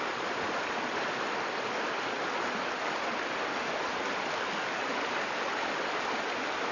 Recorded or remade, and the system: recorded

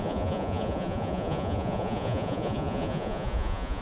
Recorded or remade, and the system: remade, vocoder, Vocos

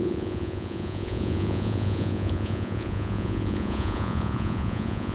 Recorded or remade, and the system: remade, vocoder, Vocos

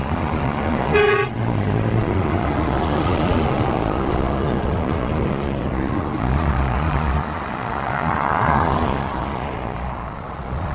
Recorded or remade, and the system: remade, vocoder, Vocos